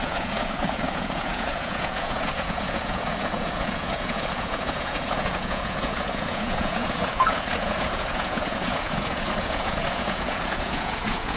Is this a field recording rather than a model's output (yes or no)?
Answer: no